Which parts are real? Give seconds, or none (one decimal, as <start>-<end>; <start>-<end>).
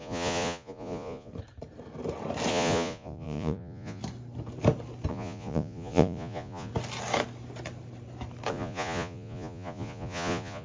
1.3-2.5; 4.0-5.1; 6.7-8.5